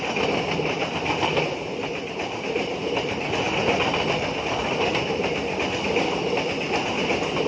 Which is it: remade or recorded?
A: recorded